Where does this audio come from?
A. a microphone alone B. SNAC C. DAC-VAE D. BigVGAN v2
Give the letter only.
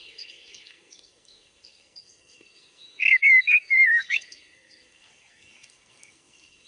B